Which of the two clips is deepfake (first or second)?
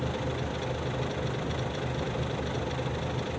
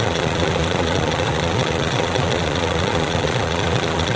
second